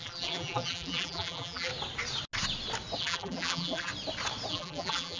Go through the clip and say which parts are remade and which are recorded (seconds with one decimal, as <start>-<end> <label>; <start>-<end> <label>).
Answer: 0.0-1.7 remade; 1.7-3.0 recorded; 3.0-3.9 remade; 3.9-4.5 recorded; 4.5-5.2 remade